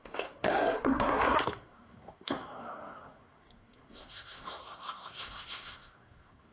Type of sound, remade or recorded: remade